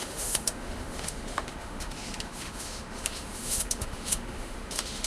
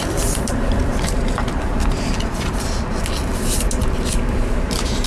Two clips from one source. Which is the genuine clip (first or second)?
second